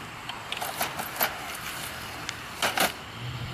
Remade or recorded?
recorded